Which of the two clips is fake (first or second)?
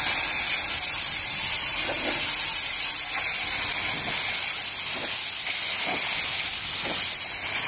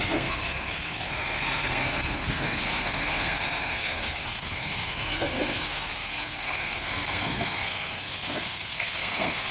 second